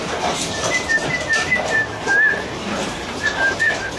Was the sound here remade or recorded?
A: remade